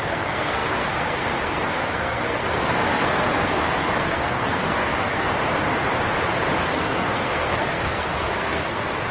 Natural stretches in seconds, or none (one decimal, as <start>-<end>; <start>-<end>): 5.3-6.6